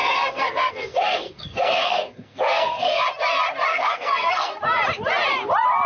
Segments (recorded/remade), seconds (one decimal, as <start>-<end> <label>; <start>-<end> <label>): 0.0-3.0 remade; 3.0-3.7 recorded; 3.7-4.6 remade; 4.6-5.9 recorded